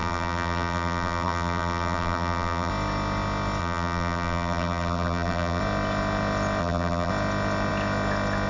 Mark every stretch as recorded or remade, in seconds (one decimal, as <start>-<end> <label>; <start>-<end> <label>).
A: 0.0-2.7 remade; 2.7-3.6 recorded; 3.6-5.6 remade; 5.6-6.6 recorded; 6.6-7.1 remade; 7.1-8.5 recorded